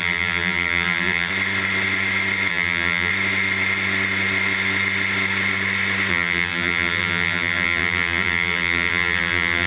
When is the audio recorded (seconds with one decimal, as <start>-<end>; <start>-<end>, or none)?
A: 1.3-2.5; 3.1-6.1